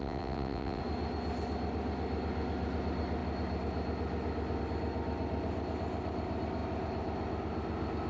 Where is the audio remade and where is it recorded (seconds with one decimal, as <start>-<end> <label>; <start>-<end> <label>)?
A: 0.0-0.8 remade; 0.8-8.1 recorded